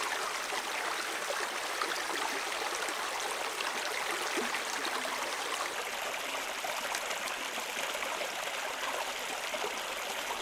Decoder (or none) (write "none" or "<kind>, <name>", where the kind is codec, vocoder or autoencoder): none